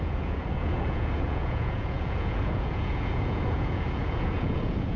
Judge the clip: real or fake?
fake